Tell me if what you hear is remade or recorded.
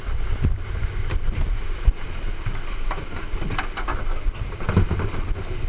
recorded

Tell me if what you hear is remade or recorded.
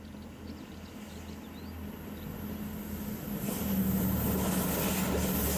recorded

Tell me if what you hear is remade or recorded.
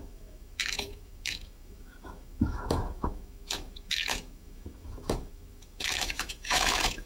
remade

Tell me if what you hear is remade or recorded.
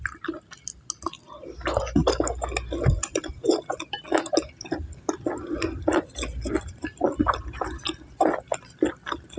recorded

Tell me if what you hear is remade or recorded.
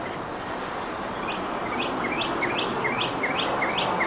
recorded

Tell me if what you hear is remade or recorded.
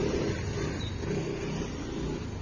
recorded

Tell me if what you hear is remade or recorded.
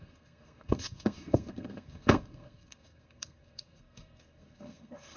remade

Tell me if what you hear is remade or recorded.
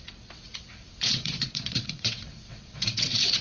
remade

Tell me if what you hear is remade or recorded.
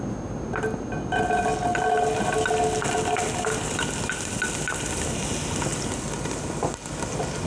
recorded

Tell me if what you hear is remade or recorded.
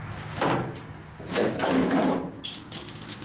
remade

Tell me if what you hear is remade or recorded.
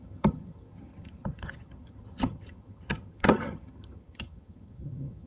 remade